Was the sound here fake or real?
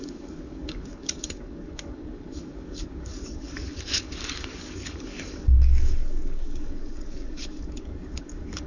fake